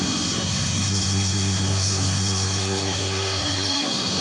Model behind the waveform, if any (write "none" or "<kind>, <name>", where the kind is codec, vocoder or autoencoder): codec, SNAC